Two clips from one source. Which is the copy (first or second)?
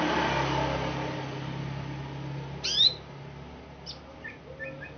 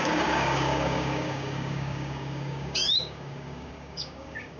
second